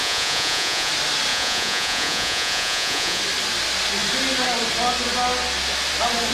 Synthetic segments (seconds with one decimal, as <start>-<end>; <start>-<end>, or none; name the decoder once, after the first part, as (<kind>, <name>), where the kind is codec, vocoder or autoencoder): 0.0-0.9 (vocoder, Vocos); 1.3-3.2